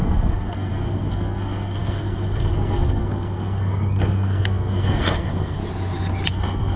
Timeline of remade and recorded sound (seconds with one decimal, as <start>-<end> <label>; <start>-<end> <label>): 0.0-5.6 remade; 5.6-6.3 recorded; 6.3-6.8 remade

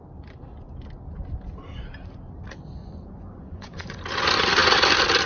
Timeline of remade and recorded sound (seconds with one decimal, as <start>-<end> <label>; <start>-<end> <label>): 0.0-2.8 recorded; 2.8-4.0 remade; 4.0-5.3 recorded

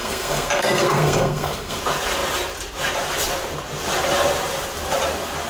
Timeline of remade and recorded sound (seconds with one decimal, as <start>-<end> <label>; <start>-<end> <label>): 0.0-1.8 remade; 1.8-5.5 recorded

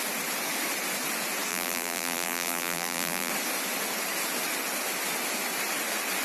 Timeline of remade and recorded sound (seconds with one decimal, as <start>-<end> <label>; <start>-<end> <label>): 0.0-1.5 recorded; 1.5-3.3 remade; 3.3-6.2 recorded

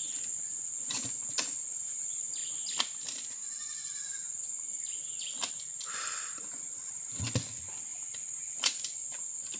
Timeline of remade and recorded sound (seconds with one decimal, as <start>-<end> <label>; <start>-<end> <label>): 0.0-9.6 recorded